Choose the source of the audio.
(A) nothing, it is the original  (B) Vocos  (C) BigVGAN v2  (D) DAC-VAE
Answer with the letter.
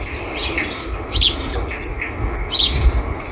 A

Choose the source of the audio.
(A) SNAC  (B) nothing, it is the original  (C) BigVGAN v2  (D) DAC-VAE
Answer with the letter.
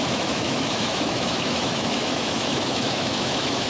D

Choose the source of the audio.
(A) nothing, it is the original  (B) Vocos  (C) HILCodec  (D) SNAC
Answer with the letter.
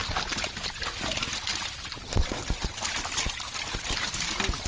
A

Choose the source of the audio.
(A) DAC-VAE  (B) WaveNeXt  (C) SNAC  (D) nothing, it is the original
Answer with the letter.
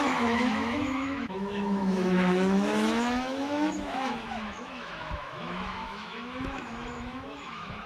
A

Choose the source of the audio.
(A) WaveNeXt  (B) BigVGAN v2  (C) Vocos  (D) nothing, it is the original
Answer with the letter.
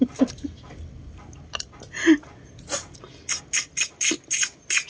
D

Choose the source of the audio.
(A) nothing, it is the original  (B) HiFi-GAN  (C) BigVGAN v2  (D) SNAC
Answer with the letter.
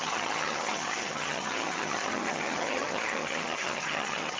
B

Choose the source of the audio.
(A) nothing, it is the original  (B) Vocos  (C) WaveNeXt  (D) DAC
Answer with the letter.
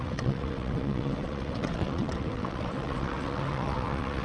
C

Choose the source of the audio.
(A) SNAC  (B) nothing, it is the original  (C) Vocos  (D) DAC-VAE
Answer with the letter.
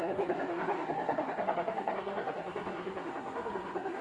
A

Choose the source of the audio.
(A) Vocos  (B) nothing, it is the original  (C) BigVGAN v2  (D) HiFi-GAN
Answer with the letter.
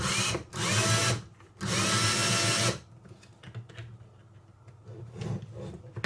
B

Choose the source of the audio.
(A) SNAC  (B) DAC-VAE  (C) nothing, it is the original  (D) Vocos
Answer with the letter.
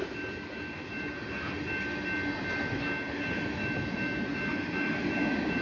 C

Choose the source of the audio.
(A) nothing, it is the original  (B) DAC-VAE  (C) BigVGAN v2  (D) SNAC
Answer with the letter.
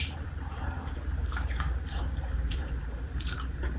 C